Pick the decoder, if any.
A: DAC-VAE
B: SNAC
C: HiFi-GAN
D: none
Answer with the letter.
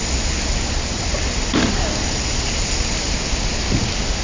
D